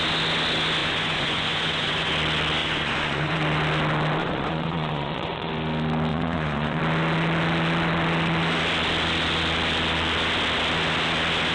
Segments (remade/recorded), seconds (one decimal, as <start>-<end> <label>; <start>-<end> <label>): 0.0-0.8 recorded; 0.8-2.1 remade; 2.1-2.6 recorded; 2.6-3.4 remade; 3.4-4.2 recorded; 4.2-5.5 remade; 5.5-6.1 recorded; 6.1-6.8 remade; 6.8-11.5 recorded